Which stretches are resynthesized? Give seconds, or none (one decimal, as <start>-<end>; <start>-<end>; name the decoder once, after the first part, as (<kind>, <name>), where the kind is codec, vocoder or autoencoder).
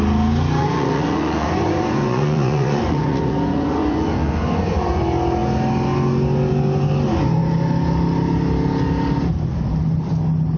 0.6-5.0 (vocoder, Vocos)